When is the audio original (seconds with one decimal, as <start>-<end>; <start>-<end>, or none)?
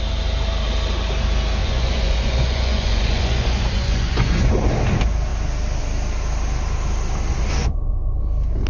0.0-1.6; 4.5-7.6; 8.2-8.7